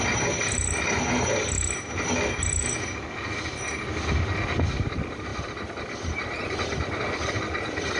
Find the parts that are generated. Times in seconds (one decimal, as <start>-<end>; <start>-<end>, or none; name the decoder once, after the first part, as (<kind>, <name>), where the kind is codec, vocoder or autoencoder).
none